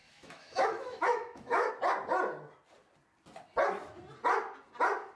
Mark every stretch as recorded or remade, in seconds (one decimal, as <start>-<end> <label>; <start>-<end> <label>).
0.0-1.7 remade; 1.7-5.2 recorded